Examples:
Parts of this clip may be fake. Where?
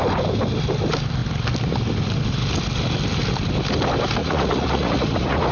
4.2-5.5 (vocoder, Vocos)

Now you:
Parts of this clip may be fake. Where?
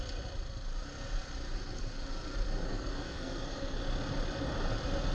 2.7-3.8 (codec, SNAC)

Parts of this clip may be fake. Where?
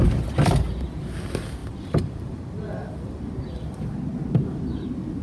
1.6-3.2 (vocoder, BigVGAN v2)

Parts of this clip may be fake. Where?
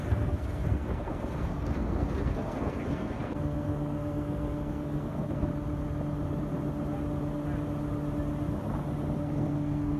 0.0-5.5 (codec, SNAC); 9.2-10.0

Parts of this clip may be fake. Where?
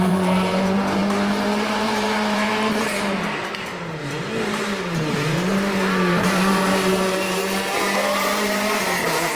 0.0-3.7 (vocoder, BigVGAN v2); 4.7-9.4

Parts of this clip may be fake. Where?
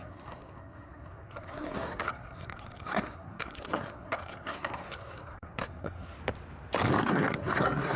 0.0-6.2 (codec, SNAC); 7.0-8.0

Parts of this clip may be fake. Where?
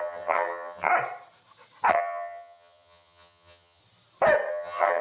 0.0-0.9 (vocoder, HiFi-GAN); 1.9-3.8; 4.5-5.0